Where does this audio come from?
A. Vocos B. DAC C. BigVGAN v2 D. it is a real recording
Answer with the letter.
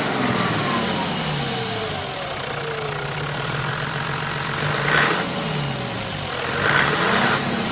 D